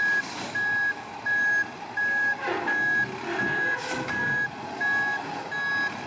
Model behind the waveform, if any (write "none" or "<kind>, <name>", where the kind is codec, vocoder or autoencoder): none